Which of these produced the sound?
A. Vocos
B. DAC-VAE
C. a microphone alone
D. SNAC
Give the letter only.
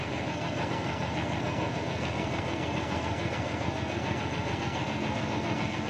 D